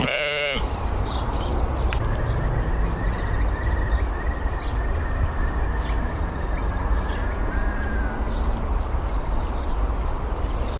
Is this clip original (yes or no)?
yes